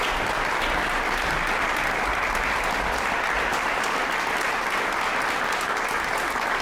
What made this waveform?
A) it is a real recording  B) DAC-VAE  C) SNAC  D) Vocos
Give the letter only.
A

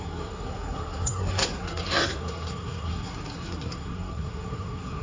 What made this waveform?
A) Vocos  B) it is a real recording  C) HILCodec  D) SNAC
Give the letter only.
D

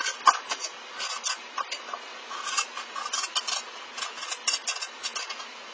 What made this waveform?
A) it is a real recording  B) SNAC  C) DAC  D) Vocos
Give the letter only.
A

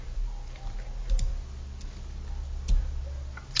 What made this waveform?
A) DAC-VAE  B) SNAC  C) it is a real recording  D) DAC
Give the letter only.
C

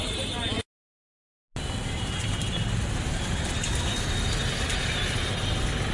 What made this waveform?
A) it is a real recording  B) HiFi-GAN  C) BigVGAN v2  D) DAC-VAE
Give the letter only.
A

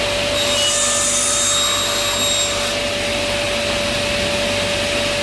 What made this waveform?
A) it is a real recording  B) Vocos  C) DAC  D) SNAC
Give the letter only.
A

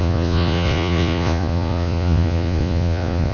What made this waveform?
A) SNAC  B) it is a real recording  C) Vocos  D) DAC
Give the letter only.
C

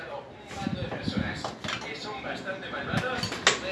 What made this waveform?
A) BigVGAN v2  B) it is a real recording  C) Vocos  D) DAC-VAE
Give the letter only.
B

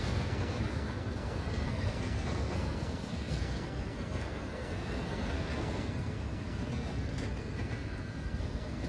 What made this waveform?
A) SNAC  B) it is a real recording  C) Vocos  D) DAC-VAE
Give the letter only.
A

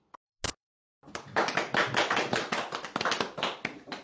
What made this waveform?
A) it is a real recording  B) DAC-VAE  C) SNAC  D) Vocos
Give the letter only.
A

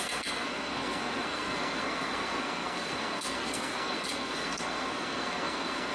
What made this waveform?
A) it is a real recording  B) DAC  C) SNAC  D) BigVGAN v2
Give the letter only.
C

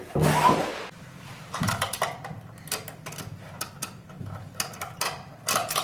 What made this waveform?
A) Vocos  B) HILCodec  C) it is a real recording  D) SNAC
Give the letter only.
C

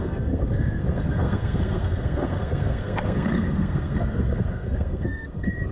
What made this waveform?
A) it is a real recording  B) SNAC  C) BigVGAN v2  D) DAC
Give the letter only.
B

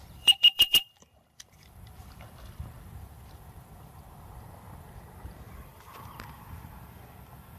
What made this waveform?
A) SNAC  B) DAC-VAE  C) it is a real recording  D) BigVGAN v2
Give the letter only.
D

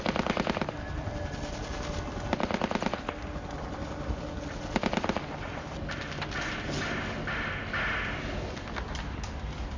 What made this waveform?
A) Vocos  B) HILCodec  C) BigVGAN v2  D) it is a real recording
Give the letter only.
D